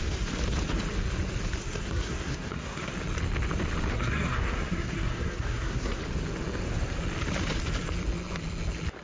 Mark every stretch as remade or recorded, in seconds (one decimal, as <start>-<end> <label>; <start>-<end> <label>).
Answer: 0.0-1.6 recorded; 1.6-2.9 remade; 2.9-3.9 recorded; 3.9-6.0 remade; 6.0-9.0 recorded